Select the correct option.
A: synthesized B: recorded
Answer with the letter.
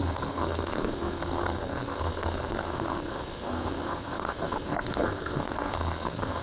A